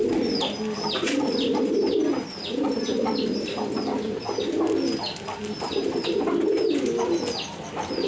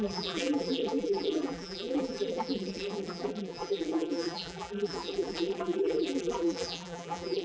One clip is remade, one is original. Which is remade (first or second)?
second